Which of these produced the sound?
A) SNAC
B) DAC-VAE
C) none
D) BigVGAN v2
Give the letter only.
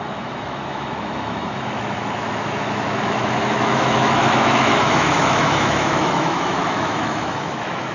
B